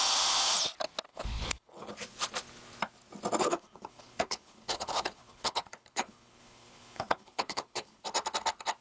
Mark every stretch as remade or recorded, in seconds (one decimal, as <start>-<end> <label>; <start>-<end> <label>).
0.0-1.1 recorded; 1.1-1.9 remade; 1.9-3.4 recorded; 3.4-8.0 remade; 8.0-8.8 recorded